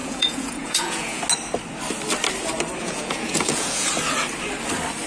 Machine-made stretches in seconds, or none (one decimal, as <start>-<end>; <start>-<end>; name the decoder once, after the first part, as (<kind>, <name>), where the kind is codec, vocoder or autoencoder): 0.0-1.2 (vocoder, Vocos); 2.8-3.9